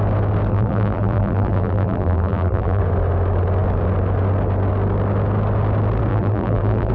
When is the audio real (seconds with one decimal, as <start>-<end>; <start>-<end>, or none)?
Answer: 0.0-0.5; 2.8-6.1